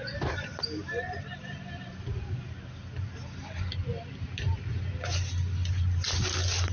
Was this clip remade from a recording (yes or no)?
no